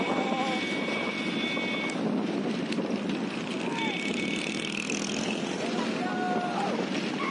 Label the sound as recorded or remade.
recorded